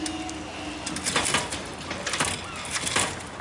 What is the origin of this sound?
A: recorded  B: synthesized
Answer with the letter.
A